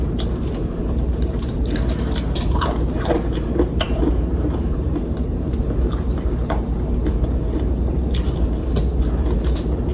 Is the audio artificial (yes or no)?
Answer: yes